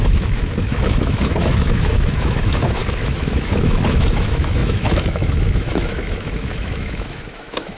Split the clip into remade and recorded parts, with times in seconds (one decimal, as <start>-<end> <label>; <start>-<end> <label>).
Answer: 0.0-7.8 remade

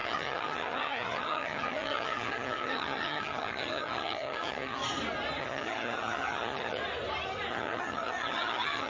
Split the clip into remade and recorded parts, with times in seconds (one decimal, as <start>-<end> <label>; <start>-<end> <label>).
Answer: 0.0-4.8 remade; 4.8-5.4 recorded; 5.4-6.8 remade; 6.8-7.5 recorded; 7.5-8.9 remade

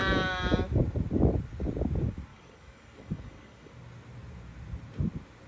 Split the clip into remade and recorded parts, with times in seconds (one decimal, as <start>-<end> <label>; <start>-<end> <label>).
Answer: 0.0-2.3 recorded; 2.3-3.7 remade; 3.7-5.5 recorded

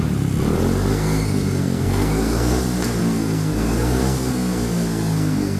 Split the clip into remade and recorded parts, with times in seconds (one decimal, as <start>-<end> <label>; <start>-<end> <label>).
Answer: 0.0-0.9 recorded; 0.9-2.6 remade; 2.6-3.0 recorded; 3.0-5.6 remade

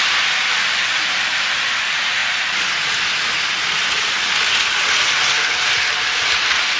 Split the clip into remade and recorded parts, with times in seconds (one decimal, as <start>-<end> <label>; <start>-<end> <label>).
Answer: 0.0-6.8 recorded

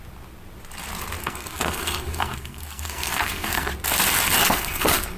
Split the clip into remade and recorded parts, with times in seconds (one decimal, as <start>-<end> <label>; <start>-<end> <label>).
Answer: 0.0-1.2 recorded; 1.2-3.7 remade; 3.7-4.4 recorded; 4.4-5.2 remade

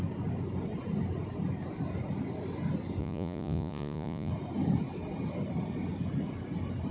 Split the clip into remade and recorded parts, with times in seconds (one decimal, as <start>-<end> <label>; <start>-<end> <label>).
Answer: 0.0-3.0 recorded; 3.0-4.3 remade; 4.3-6.9 recorded